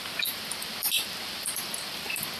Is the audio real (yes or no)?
yes